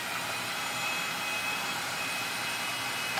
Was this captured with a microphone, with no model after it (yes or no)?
no